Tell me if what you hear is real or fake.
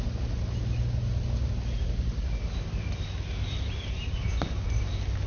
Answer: real